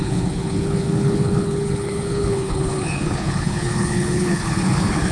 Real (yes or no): no